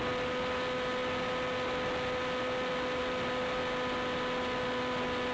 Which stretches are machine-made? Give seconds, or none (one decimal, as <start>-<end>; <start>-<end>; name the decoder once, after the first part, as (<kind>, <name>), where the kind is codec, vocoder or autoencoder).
none